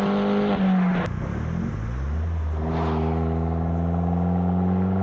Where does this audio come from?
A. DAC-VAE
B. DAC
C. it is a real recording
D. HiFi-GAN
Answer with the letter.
C